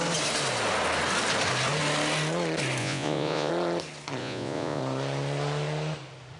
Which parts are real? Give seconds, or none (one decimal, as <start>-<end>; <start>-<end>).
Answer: 0.0-2.8; 3.5-4.2; 4.8-6.4